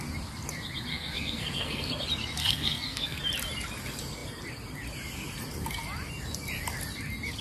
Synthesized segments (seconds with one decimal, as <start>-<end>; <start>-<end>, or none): 0.9-1.9; 2.4-3.2

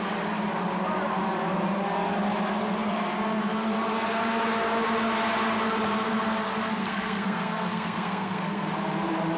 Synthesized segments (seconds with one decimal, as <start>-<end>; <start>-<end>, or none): 6.8-8.7

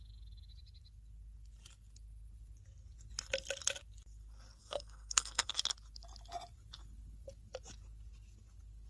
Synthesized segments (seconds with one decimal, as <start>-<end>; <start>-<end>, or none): 4.6-5.5

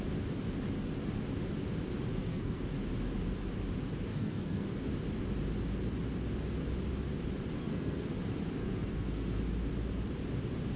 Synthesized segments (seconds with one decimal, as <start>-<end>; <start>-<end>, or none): 2.1-2.6; 4.1-4.9; 7.6-8.1; 8.6-9.4

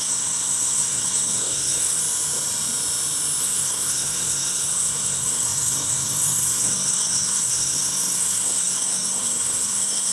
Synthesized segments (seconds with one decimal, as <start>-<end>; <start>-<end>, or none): 0.0-2.0; 3.4-10.1

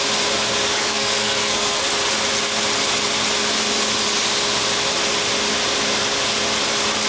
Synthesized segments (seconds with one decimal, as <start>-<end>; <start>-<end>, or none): 0.7-1.8

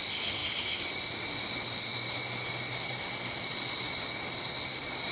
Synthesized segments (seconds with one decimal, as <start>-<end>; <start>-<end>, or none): none

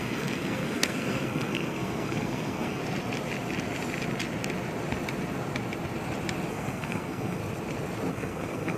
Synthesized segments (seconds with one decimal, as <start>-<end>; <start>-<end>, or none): 0.0-2.8; 6.5-7.4; 8.1-8.8